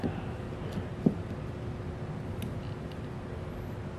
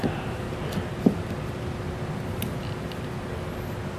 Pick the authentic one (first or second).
first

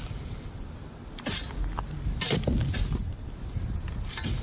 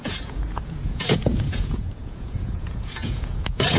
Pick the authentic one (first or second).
first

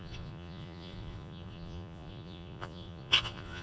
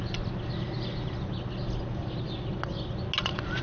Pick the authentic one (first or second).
second